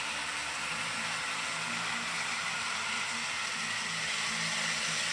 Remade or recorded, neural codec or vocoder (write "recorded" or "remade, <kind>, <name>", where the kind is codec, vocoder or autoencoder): recorded